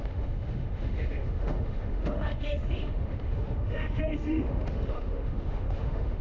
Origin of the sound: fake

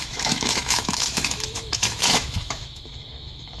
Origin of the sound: fake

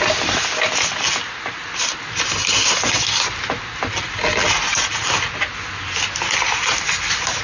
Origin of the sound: real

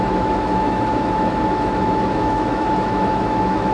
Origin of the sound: fake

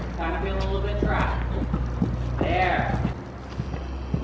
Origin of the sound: real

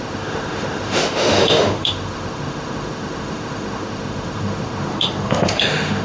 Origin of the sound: fake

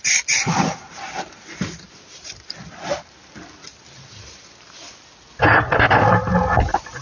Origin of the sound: real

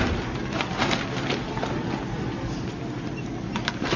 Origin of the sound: real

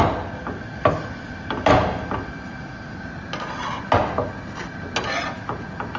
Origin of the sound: real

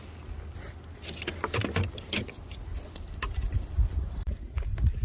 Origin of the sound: real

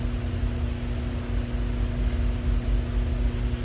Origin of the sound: real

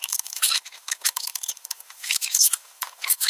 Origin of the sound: fake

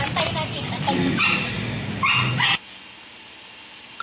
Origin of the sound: real